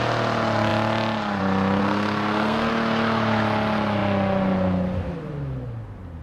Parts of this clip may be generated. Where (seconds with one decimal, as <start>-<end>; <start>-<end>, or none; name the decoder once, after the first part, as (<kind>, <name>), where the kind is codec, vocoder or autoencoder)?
1.8-2.7 (codec, SNAC)